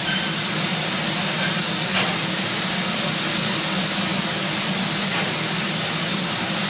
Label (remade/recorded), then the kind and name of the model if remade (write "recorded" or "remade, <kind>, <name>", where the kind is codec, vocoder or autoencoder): recorded